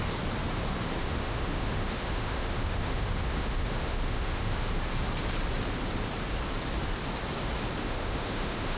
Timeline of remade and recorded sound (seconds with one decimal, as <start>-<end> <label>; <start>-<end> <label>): 0.0-1.0 recorded; 1.0-4.7 remade; 4.7-7.8 recorded; 7.8-8.8 remade